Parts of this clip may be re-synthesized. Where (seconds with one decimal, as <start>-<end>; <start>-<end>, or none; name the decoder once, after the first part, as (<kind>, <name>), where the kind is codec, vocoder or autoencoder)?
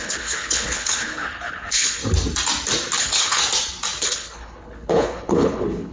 0.0-2.0 (codec, HILCodec); 3.0-3.4; 4.0-5.9